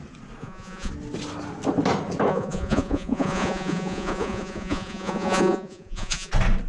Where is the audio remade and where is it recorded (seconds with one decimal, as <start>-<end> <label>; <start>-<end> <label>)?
0.0-0.4 recorded; 0.4-0.9 remade; 0.9-2.3 recorded; 2.3-6.3 remade; 6.3-6.7 recorded